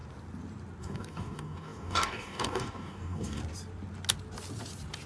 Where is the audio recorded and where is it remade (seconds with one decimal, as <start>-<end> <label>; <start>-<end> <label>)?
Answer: 0.0-0.8 recorded; 0.8-3.4 remade; 3.4-5.1 recorded